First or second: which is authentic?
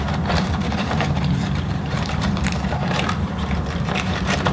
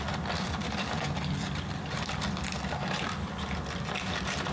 second